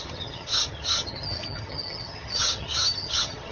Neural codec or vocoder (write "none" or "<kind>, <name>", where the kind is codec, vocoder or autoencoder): vocoder, HiFi-GAN